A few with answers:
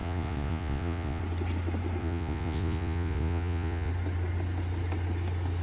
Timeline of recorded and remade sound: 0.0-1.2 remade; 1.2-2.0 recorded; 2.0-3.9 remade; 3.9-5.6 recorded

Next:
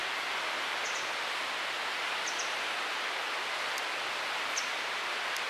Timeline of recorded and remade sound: 0.0-5.5 recorded

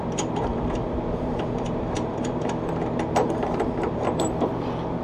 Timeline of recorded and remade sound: 0.0-0.5 recorded; 0.5-2.7 remade; 2.7-3.2 recorded; 3.2-4.5 remade; 4.5-5.0 recorded

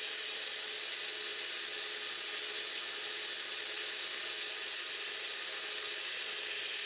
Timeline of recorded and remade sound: 0.0-6.9 recorded

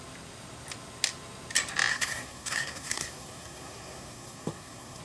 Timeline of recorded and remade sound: 0.0-1.9 recorded; 1.9-5.0 remade

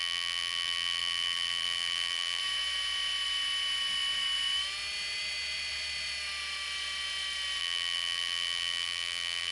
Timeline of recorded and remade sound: 0.0-2.4 remade; 2.4-7.6 recorded; 7.6-9.5 remade